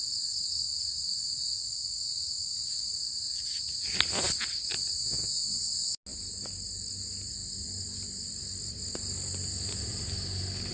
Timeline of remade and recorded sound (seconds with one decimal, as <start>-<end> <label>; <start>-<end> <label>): 0.0-5.0 recorded; 5.0-5.6 remade; 5.6-10.7 recorded